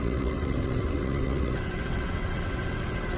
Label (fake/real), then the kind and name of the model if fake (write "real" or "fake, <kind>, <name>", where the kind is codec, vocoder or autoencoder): fake, vocoder, WaveNeXt